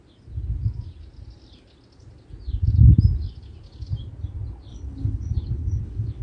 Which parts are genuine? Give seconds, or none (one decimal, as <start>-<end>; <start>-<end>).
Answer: 0.0-4.7